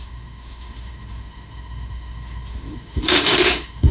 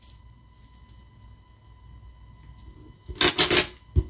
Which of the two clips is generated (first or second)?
first